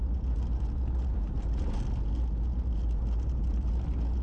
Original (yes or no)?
yes